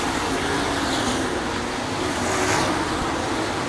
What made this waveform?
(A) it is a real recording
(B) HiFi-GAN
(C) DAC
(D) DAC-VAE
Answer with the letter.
A